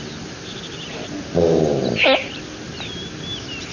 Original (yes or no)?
yes